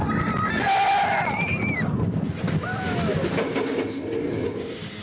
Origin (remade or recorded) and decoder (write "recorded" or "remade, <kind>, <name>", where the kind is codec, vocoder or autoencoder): recorded